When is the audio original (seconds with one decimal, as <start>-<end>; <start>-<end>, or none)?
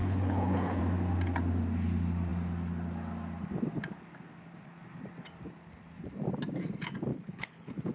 0.8-7.1